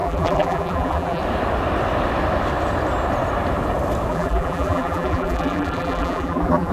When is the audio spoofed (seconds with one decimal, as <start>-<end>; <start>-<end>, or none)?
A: 0.0-1.2; 4.1-6.7